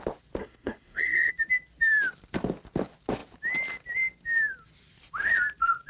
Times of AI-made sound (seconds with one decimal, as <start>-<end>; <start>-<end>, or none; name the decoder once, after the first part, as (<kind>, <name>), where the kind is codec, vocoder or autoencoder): 0.4-1.3 (codec, SNAC)